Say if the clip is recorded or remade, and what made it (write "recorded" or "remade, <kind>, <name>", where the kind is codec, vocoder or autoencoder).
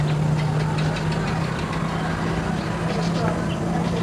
recorded